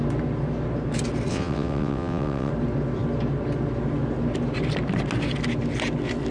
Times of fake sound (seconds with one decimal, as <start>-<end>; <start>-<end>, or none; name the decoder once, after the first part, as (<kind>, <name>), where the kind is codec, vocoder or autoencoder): 1.3-2.5 (vocoder, WaveNeXt)